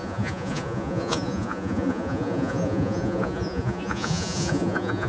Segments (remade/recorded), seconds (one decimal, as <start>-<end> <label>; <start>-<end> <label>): 0.0-5.1 remade